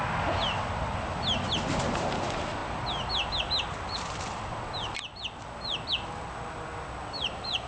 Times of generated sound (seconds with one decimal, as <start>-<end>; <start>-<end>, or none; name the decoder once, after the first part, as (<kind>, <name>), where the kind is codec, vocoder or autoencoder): none